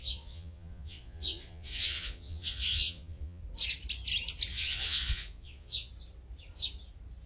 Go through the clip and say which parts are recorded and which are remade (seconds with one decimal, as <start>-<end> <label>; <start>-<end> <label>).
0.0-3.4 remade; 3.4-4.5 recorded; 4.5-5.9 remade; 5.9-7.3 recorded